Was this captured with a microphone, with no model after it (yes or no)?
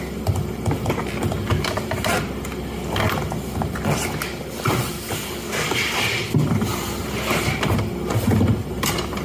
yes